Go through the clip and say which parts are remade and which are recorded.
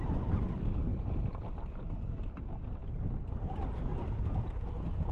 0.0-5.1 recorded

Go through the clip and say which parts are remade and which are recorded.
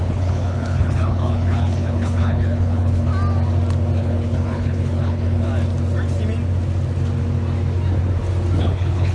0.0-3.1 remade; 3.1-4.0 recorded; 4.0-5.5 remade; 5.5-8.6 recorded; 8.6-9.1 remade